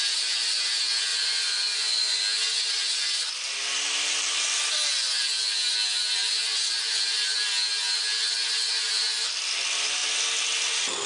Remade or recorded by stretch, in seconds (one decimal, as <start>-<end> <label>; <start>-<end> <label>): 0.0-1.1 recorded; 1.1-2.2 remade; 2.2-11.1 recorded